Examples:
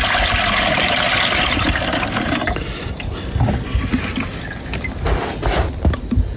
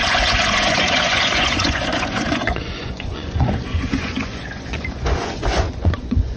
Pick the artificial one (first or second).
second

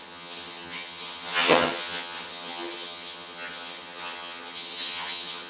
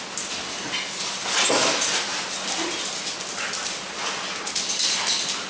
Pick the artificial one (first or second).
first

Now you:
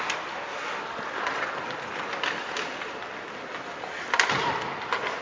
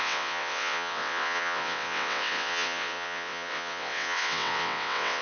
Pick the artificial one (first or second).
second